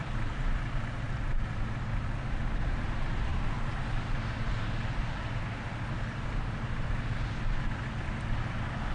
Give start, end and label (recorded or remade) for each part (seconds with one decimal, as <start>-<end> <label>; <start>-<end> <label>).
0.0-8.9 recorded